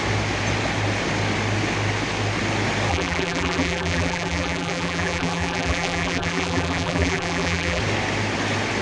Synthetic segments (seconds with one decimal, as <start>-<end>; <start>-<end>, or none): 2.9-7.8